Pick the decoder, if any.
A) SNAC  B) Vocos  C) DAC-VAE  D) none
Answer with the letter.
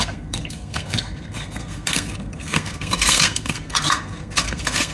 A